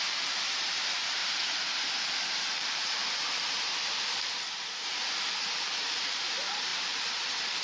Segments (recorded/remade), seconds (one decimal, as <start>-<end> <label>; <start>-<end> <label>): 0.0-1.2 remade; 1.2-2.4 recorded; 2.4-3.0 remade; 3.0-5.3 recorded; 5.3-7.6 remade